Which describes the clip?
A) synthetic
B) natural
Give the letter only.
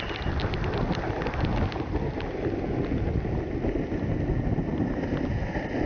B